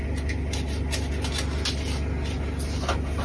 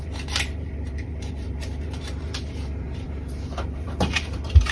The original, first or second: first